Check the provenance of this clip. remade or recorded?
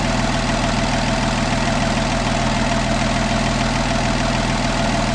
recorded